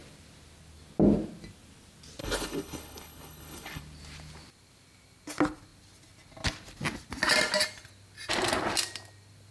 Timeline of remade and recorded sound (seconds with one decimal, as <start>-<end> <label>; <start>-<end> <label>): 0.0-2.2 recorded; 2.2-3.8 remade; 3.8-9.5 recorded